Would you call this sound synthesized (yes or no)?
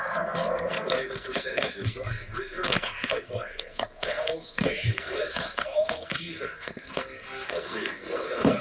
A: yes